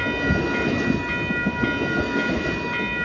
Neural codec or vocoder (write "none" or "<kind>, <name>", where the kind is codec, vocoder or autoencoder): none